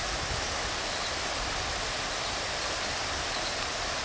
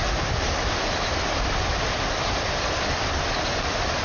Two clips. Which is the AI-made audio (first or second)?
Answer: second